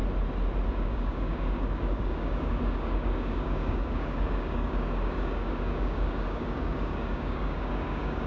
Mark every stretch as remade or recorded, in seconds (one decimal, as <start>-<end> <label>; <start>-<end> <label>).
0.0-0.7 recorded; 0.7-8.3 remade

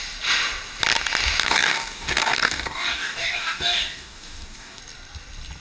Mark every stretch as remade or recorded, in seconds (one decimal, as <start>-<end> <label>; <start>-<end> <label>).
0.0-1.4 recorded; 1.4-4.8 remade; 4.8-5.6 recorded

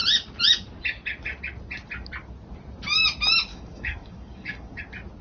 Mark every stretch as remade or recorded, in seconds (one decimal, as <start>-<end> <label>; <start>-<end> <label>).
0.0-3.5 recorded; 3.5-4.8 remade; 4.8-5.2 recorded